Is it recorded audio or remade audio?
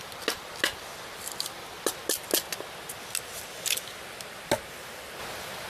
recorded